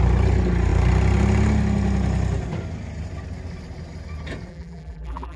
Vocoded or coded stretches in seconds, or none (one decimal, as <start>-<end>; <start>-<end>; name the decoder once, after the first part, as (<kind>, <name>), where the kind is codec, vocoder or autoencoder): 4.5-5.4 (vocoder, BigVGAN v2)